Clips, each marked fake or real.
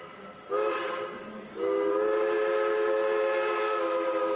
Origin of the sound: real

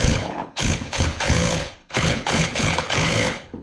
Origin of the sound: fake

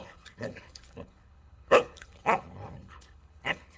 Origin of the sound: fake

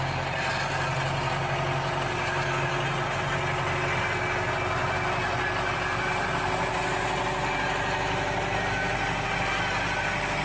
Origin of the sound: real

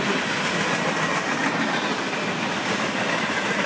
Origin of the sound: real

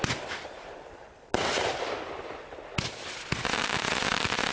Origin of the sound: real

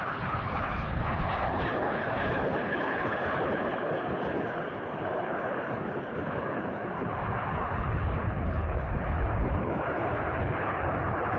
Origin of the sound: fake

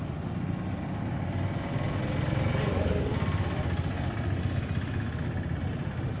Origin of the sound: real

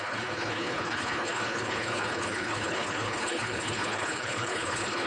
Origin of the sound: fake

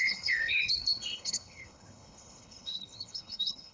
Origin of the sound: fake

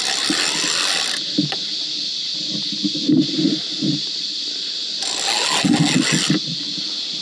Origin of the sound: real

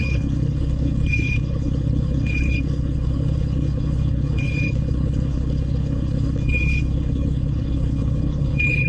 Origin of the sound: fake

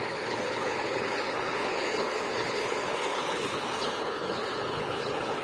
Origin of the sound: fake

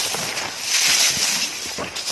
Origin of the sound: real